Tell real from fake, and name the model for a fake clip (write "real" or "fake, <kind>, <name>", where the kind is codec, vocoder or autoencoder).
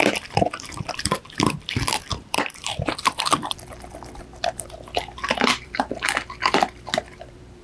fake, vocoder, BigVGAN v2